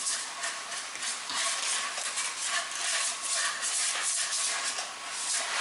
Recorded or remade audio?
recorded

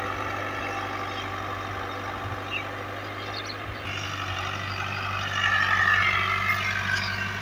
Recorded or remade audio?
recorded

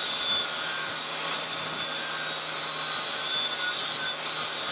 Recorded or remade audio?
recorded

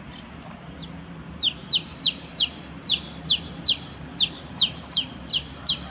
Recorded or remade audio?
remade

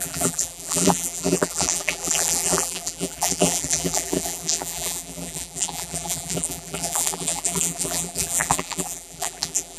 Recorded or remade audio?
remade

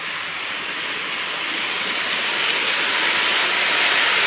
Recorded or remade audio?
remade